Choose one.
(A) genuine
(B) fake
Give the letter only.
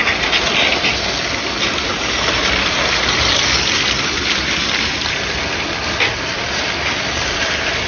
A